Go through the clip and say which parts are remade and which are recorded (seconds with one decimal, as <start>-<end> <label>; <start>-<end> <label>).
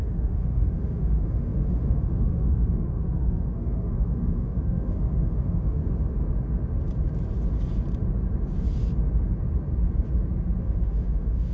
0.0-5.8 remade; 5.8-10.6 recorded; 10.6-11.5 remade